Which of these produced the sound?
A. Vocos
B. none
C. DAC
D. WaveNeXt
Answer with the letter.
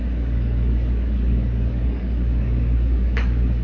C